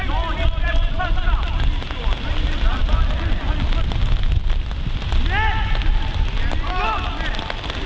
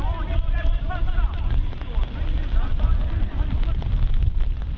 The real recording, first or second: first